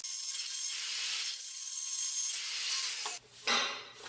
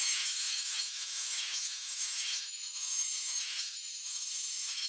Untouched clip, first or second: first